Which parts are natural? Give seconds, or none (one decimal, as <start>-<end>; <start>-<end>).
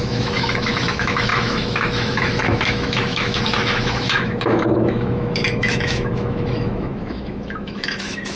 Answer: none